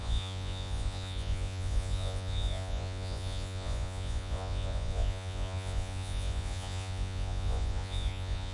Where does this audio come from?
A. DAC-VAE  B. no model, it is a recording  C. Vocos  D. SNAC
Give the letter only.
C